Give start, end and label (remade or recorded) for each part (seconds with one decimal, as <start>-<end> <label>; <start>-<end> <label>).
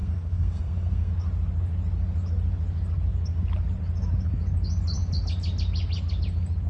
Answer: 0.0-1.1 remade; 1.1-6.7 recorded